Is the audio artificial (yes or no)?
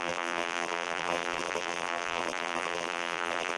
yes